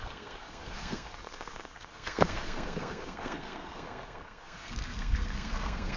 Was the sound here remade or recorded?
remade